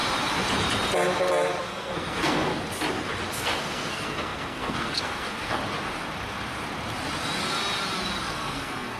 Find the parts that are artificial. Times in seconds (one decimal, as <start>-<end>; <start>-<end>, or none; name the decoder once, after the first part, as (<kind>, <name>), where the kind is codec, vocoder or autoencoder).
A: 1.6-2.5 (codec, SNAC); 3.3-5.6; 8.2-9.0

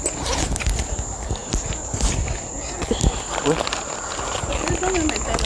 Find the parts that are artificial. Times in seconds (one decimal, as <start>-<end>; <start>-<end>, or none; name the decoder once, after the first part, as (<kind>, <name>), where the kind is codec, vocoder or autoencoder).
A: none

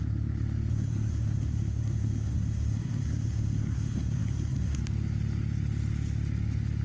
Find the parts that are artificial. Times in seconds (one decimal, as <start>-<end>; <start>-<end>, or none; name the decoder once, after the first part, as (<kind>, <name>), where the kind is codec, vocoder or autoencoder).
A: 0.7-4.8 (codec, SNAC)